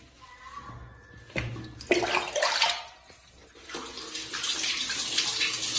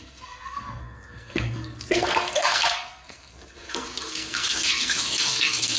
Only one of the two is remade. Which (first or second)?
second